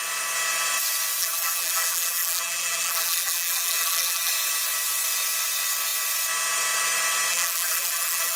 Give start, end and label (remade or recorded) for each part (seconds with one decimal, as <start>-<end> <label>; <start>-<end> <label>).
0.0-1.2 recorded; 1.2-4.3 remade; 4.3-7.3 recorded; 7.3-8.4 remade

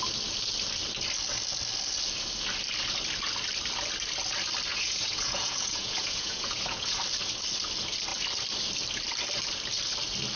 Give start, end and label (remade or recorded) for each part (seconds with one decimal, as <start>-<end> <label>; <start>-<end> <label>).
0.0-4.7 recorded; 4.7-7.0 remade; 7.0-10.4 recorded

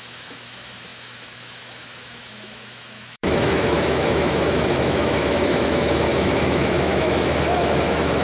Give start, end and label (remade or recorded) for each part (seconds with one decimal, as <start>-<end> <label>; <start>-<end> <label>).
0.0-8.2 remade